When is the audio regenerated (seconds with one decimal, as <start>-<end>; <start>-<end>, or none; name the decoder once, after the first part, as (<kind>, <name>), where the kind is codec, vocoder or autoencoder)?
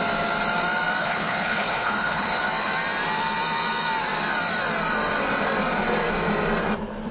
1.0-2.4 (codec, HILCodec)